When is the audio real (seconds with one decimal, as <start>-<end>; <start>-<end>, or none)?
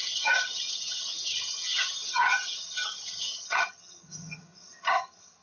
none